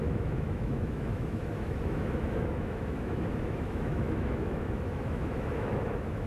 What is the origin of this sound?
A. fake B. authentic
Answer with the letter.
A